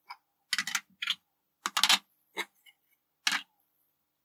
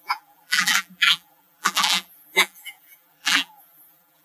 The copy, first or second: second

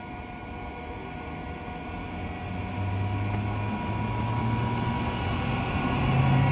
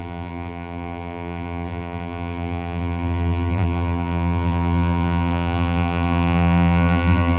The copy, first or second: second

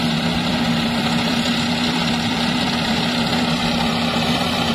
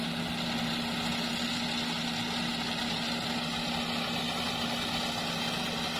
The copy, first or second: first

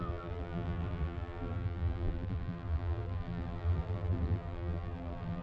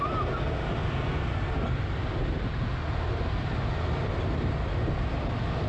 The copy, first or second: first